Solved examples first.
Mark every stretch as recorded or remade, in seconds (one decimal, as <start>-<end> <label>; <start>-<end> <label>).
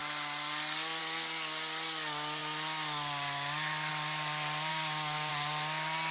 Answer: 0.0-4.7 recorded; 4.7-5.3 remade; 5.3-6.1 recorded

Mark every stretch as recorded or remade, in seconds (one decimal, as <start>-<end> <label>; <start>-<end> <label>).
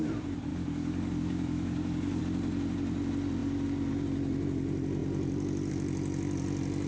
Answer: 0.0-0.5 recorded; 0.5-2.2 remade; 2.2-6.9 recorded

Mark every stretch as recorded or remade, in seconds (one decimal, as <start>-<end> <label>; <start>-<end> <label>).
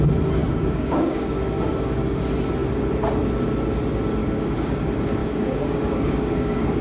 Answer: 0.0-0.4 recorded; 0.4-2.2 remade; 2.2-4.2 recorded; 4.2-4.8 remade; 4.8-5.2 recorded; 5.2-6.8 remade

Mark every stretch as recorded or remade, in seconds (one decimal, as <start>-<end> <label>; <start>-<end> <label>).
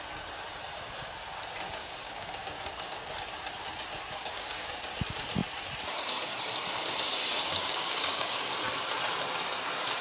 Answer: 0.0-1.8 recorded; 1.8-3.1 remade; 3.1-4.2 recorded; 4.2-4.7 remade; 4.7-7.5 recorded; 7.5-8.5 remade; 8.5-10.0 recorded